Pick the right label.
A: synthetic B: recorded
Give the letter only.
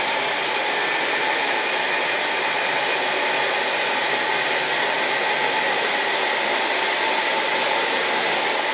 B